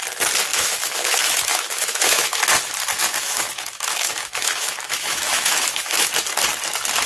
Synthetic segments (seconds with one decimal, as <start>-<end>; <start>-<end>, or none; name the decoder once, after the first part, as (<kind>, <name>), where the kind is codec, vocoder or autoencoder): 0.5-2.4 (autoencoder, DAC-VAE); 3.0-6.1